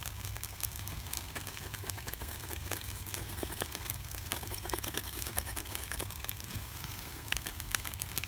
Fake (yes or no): yes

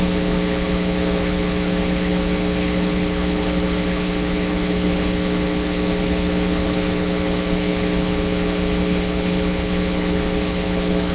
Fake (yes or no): yes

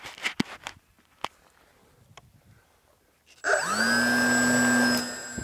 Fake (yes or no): no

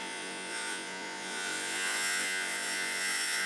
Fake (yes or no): yes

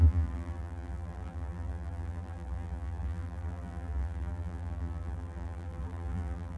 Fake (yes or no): yes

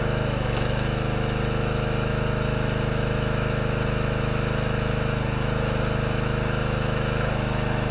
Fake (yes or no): yes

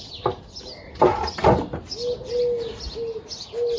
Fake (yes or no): no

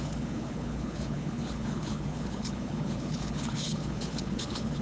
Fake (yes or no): yes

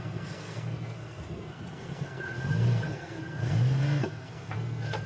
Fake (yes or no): yes